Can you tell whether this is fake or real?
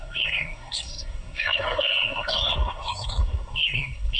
fake